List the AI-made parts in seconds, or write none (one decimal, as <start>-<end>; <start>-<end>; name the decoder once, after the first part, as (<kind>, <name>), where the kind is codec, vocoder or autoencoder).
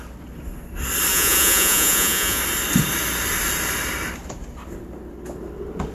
1.1-2.4 (vocoder, Vocos)